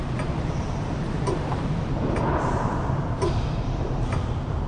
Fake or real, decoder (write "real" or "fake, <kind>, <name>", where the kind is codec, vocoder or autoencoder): fake, vocoder, BigVGAN v2